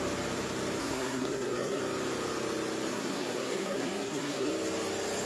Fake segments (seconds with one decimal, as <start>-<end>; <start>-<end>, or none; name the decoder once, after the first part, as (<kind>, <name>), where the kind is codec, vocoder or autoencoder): 0.8-1.8 (codec, SNAC); 2.9-4.5